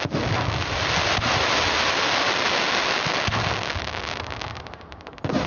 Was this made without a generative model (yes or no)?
yes